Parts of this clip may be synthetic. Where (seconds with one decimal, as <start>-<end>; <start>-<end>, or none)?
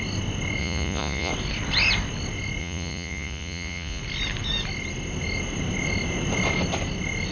0.6-1.3; 2.6-4.0